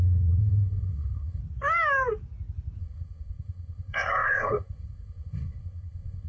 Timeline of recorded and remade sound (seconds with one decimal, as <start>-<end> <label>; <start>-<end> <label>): 0.0-1.4 remade; 1.4-2.8 recorded; 2.8-6.3 remade